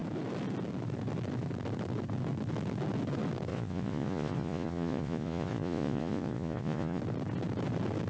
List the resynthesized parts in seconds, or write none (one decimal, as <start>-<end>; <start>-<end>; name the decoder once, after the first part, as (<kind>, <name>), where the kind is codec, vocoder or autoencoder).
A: 3.5-7.0 (vocoder, Vocos)